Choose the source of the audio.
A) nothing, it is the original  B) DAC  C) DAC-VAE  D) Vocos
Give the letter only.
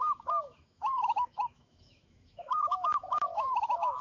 C